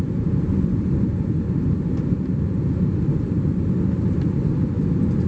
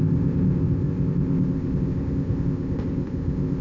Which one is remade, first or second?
second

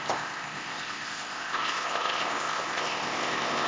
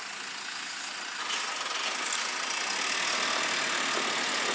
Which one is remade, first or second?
first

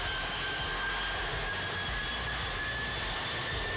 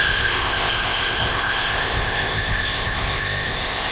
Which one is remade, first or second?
second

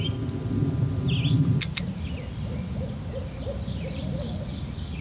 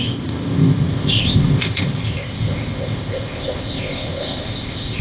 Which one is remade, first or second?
second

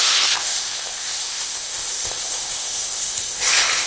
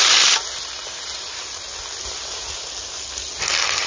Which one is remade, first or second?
first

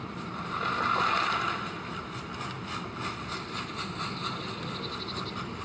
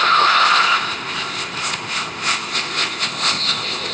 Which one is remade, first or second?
second